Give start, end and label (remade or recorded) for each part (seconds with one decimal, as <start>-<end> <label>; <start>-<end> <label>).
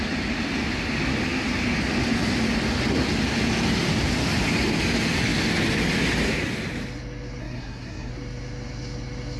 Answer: 0.0-7.4 recorded; 7.4-8.1 remade; 8.1-9.4 recorded